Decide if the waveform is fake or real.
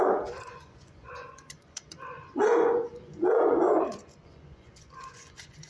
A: fake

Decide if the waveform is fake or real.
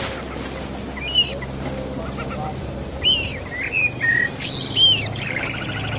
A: real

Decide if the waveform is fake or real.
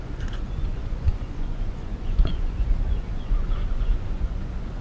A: fake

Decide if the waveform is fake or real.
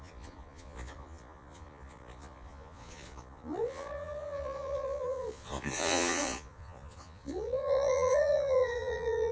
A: fake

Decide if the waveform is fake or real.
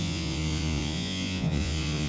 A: fake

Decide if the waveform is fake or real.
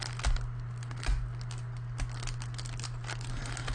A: real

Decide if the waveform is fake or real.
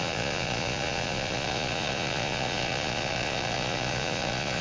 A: fake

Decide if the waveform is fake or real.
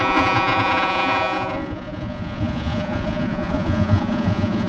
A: fake